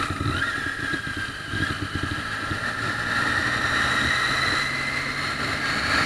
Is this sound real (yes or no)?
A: yes